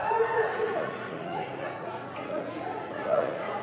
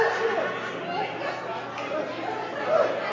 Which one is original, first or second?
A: second